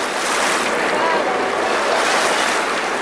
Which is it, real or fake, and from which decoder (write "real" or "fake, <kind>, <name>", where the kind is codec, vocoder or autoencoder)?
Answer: real